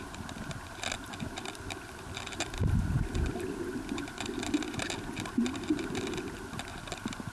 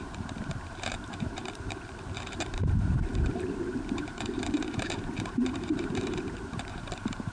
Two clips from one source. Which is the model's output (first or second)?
second